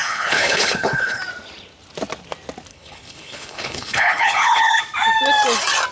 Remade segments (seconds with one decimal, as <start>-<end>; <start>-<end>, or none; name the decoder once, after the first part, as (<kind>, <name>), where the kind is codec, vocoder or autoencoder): 0.0-1.2 (codec, HILCodec); 2.7-4.8